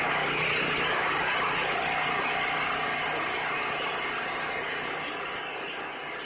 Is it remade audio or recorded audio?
recorded